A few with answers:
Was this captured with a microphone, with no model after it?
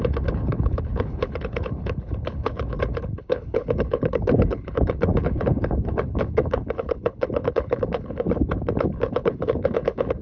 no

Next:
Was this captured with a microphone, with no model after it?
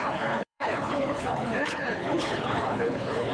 no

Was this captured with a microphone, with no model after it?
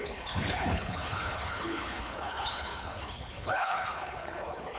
no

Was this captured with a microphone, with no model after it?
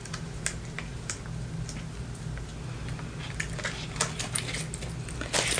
yes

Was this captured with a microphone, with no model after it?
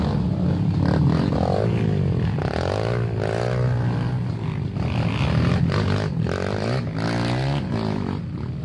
yes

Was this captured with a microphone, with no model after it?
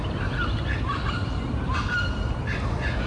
yes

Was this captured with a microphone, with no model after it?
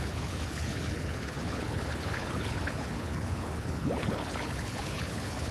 no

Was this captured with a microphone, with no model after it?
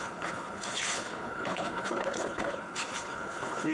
no